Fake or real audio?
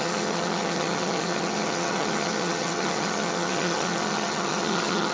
fake